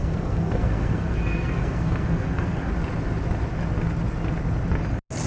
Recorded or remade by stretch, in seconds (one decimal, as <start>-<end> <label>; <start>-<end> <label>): 0.0-2.7 remade; 2.7-5.3 recorded